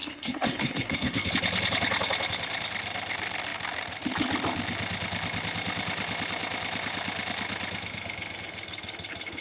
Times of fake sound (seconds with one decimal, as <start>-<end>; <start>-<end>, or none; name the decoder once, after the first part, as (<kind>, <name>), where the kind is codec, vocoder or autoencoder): 0.0-1.3 (codec, SNAC)